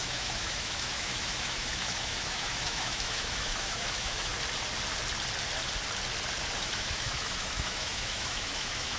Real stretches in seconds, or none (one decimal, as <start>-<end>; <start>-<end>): 4.3-6.6